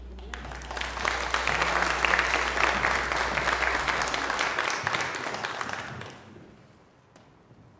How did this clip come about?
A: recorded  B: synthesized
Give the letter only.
A